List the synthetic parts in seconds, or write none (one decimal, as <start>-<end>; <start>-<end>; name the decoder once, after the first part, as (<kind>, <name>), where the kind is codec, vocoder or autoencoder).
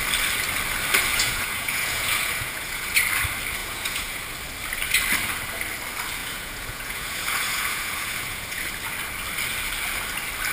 1.1-3.0 (vocoder, Vocos); 3.6-4.2; 6.2-8.6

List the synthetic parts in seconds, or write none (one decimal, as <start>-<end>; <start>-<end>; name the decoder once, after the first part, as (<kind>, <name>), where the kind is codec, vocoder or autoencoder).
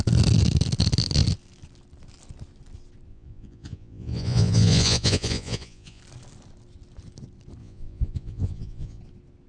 3.1-6.0 (vocoder, Vocos); 7.6-9.0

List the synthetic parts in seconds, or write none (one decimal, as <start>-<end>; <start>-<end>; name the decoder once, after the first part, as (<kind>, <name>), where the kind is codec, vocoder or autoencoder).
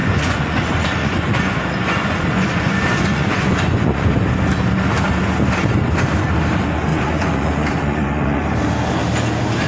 0.0-4.1 (vocoder, Vocos); 6.9-8.4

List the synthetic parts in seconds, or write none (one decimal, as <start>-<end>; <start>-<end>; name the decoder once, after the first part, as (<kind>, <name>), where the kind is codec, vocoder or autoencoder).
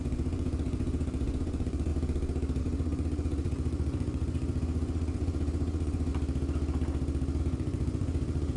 0.0-1.9 (vocoder, Vocos); 2.6-6.1; 7.4-8.6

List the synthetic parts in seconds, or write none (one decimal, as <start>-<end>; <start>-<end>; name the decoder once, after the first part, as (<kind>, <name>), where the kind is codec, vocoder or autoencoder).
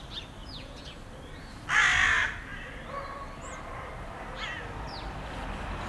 0.4-1.0 (vocoder, Vocos)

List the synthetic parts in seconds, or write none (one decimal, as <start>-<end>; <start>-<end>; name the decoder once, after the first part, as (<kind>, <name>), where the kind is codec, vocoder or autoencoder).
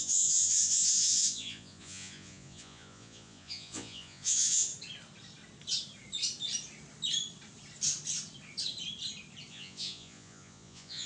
0.0-4.7 (vocoder, Vocos); 9.5-11.1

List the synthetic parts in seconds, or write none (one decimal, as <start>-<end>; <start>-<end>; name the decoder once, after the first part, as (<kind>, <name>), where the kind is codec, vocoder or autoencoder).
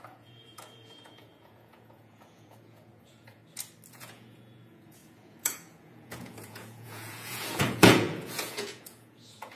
0.0-3.4 (vocoder, Vocos); 3.9-9.6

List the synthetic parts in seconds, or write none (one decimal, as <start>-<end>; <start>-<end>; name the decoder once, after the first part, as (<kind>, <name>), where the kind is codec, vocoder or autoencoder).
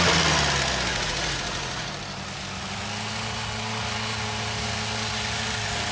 0.9-1.9 (vocoder, Vocos)